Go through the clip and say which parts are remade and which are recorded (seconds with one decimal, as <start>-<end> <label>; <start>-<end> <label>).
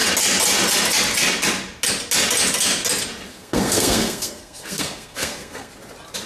0.0-3.3 recorded; 3.3-5.7 remade; 5.7-6.3 recorded